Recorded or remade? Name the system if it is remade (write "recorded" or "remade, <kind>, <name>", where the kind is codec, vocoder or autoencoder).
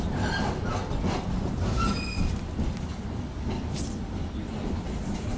recorded